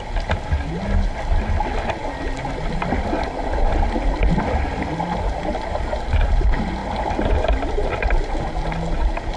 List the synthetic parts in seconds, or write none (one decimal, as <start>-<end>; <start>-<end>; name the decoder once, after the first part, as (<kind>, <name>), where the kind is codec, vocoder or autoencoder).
none